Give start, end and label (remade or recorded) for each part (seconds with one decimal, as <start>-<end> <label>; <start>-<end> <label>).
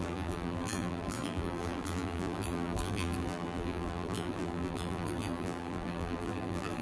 0.0-6.8 remade